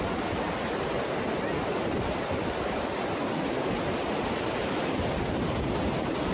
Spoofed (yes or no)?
no